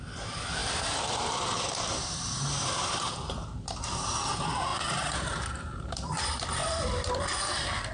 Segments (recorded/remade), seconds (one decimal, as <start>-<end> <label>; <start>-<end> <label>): 0.0-4.7 remade; 4.7-5.5 recorded; 5.5-7.9 remade